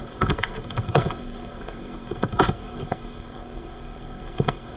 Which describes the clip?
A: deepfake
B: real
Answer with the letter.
A